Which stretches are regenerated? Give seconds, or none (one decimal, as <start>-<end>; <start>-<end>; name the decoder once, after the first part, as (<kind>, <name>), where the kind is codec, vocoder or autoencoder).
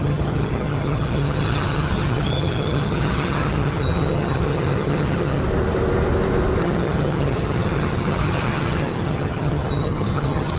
0.0-5.4 (vocoder, HiFi-GAN); 6.6-10.6